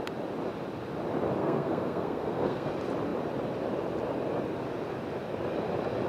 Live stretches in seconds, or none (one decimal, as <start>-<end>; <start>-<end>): 0.0-1.4; 2.7-6.1